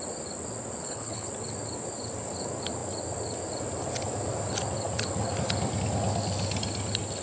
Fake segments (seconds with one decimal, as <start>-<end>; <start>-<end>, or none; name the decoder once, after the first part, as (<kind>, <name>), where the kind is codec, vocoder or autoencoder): 0.8-1.3 (codec, HILCodec)